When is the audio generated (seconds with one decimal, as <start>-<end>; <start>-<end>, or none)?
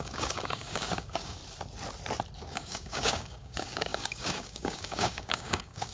0.0-1.4; 2.4-5.9